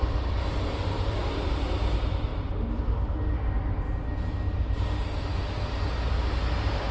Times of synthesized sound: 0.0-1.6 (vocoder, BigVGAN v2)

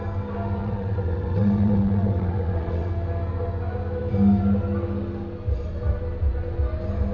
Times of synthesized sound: 0.6-2.9 (vocoder, WaveNeXt)

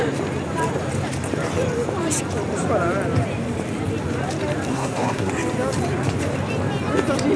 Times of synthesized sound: 4.7-5.3 (codec, SNAC)

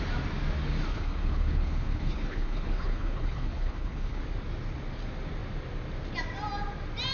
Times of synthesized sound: 0.9-4.2 (codec, HILCodec)